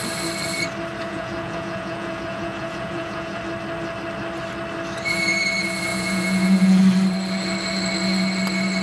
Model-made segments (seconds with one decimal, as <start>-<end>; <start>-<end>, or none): 1.0-3.4; 5.9-6.8